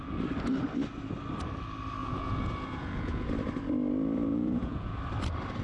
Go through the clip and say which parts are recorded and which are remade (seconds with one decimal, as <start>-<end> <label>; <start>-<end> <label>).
0.0-2.0 recorded; 2.0-3.2 remade; 3.2-4.3 recorded; 4.3-5.0 remade; 5.0-5.6 recorded